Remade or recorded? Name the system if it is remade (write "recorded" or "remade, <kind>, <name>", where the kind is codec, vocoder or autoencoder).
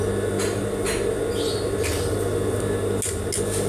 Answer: recorded